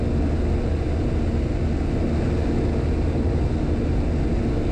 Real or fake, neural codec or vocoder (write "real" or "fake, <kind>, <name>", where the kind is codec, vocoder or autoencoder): real